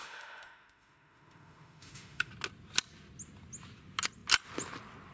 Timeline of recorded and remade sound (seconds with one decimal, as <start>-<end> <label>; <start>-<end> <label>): 0.0-2.3 remade; 2.3-5.1 recorded